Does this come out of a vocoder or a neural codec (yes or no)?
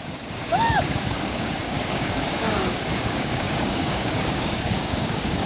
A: yes